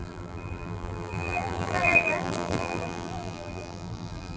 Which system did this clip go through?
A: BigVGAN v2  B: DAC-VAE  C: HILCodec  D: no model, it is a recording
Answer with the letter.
A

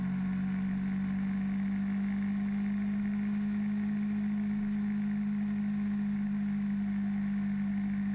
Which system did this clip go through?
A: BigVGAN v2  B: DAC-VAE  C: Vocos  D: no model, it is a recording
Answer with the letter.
D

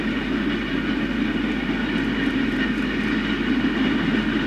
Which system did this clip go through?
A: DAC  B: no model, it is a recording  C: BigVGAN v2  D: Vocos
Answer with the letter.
B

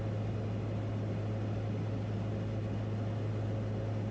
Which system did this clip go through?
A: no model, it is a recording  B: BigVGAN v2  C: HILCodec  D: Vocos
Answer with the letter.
A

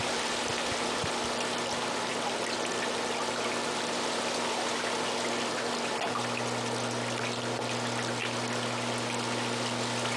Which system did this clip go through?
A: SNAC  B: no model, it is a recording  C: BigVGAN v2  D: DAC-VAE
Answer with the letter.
B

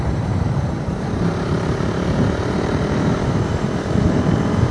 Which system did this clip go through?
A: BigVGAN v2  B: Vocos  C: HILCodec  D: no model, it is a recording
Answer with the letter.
A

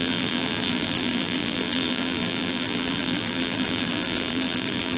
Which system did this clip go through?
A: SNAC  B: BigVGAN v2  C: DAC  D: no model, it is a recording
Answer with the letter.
B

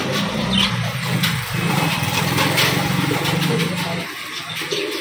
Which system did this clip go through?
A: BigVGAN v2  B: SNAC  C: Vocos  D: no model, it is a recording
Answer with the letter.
A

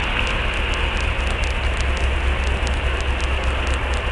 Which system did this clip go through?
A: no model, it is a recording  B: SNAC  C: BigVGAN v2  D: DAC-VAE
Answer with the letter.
A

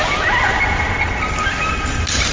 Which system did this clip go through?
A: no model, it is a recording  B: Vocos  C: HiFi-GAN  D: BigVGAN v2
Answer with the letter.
A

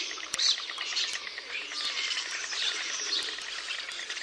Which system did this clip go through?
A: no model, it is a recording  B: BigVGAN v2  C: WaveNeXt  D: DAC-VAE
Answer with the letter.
B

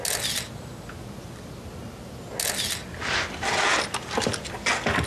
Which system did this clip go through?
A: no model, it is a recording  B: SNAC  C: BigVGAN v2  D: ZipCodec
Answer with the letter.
A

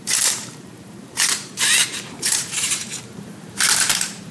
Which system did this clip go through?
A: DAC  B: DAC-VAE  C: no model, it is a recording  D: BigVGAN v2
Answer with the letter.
D